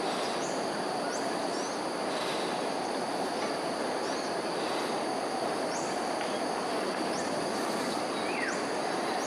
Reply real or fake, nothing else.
real